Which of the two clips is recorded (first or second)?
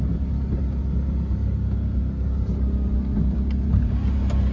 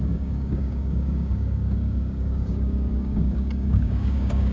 first